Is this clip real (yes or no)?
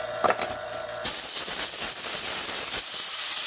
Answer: yes